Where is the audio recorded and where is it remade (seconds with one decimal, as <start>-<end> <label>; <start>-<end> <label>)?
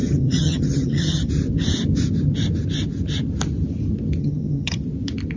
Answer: 0.0-1.3 remade; 1.3-4.2 recorded; 4.2-4.8 remade; 4.8-5.4 recorded